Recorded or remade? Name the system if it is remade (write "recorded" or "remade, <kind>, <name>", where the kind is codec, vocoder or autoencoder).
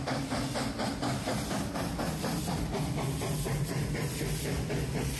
recorded